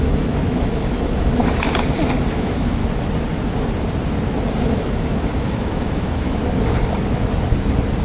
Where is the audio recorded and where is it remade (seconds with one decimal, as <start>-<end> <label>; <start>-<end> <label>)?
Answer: 0.0-1.4 remade; 1.4-2.3 recorded; 2.3-2.8 remade; 2.8-4.6 recorded; 4.6-6.4 remade; 6.4-8.0 recorded